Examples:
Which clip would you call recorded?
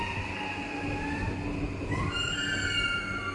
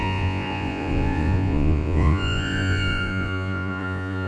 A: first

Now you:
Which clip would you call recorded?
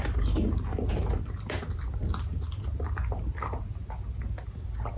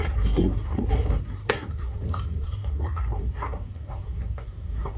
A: first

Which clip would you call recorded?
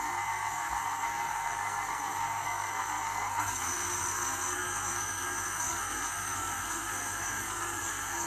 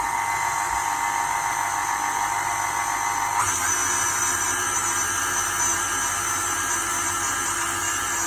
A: second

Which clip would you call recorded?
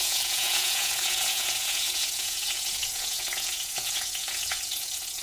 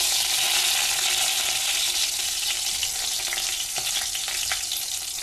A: second